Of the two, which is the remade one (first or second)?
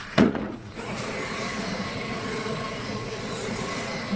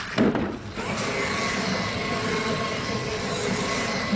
first